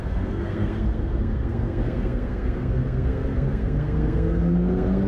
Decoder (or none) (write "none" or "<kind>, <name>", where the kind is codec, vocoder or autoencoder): codec, SNAC